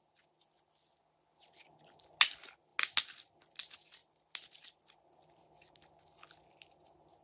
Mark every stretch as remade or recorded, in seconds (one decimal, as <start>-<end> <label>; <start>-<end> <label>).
0.0-7.2 recorded